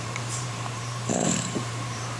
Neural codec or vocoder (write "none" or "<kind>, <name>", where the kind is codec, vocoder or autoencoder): vocoder, BigVGAN v2